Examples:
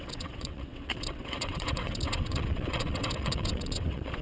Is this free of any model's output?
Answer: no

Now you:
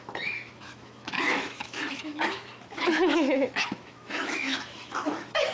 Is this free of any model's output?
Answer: no